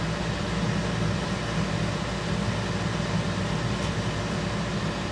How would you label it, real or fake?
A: real